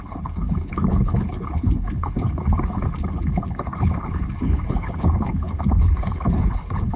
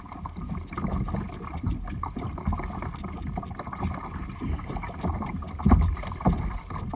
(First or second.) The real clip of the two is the second